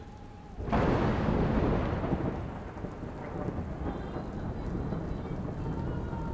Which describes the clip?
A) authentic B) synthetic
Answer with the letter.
A